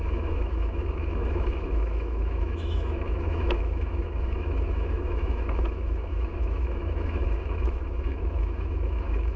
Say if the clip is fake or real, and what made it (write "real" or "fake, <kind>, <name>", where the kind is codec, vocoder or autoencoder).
fake, autoencoder, DAC-VAE